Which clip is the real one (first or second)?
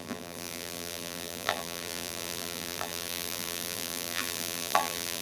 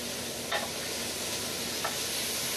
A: second